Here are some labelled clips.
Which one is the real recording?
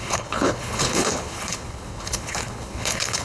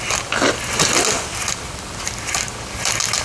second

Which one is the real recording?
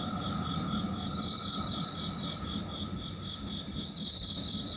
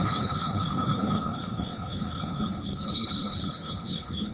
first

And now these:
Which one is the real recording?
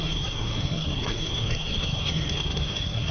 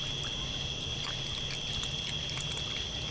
second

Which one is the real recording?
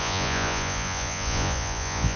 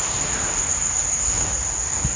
second